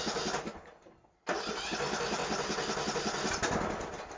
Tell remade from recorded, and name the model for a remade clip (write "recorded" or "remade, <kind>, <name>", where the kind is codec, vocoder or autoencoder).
recorded